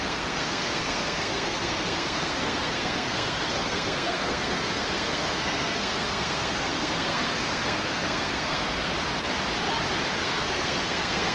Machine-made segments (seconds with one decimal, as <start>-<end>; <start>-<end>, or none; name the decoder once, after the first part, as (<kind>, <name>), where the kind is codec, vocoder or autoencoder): 0.0-8.9 (codec, SNAC); 10.2-11.3

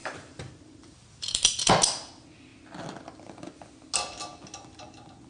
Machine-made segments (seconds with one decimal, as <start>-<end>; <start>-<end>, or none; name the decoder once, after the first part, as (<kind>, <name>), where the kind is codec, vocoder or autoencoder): 0.0-1.7 (vocoder, BigVGAN v2)

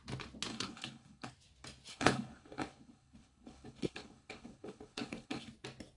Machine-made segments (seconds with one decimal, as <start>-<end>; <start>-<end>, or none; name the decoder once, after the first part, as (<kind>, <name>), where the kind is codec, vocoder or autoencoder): 0.5-1.3 (codec, HILCodec); 1.9-5.5

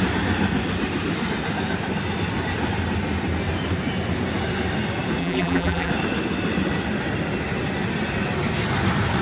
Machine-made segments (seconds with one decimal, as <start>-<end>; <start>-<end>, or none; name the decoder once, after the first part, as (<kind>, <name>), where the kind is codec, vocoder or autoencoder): 5.2-5.9 (vocoder, BigVGAN v2)

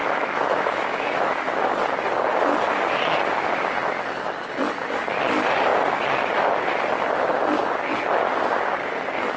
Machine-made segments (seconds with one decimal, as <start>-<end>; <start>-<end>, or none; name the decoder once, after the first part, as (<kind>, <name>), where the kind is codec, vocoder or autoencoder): 0.0-1.7 (autoencoder, DAC-VAE)

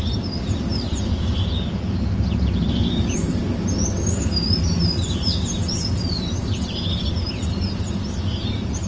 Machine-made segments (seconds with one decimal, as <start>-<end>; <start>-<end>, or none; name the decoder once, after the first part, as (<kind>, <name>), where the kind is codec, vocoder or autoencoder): 0.0-0.7 (vocoder, BigVGAN v2); 2.1-3.4; 7.0-8.9

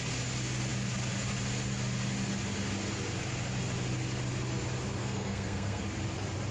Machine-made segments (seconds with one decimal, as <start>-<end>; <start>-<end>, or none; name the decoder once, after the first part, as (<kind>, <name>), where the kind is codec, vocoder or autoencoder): 5.0-5.8 (codec, SNAC)